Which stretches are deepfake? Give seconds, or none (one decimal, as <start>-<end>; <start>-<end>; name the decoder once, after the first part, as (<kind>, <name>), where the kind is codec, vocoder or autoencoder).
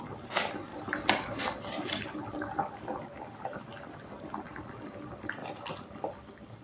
none